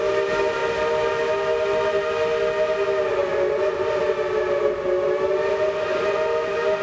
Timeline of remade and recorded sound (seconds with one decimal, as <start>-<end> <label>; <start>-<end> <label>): 0.0-6.8 recorded